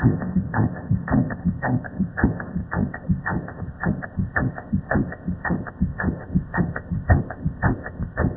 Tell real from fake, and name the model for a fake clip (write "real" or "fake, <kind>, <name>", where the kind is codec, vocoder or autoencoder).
fake, codec, ZipCodec